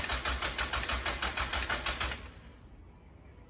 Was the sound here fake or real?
real